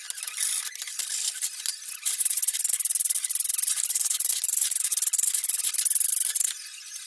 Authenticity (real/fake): real